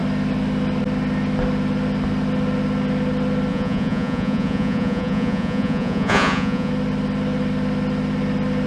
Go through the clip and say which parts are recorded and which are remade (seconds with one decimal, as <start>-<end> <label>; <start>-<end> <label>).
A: 0.0-3.5 recorded; 3.5-6.7 remade; 6.7-8.7 recorded